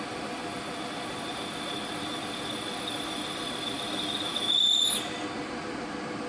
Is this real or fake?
real